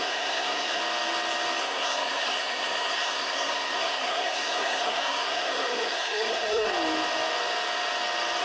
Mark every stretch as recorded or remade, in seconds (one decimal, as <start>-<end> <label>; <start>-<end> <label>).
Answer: 0.0-0.8 remade; 0.8-1.6 recorded; 1.6-6.7 remade; 6.7-8.4 recorded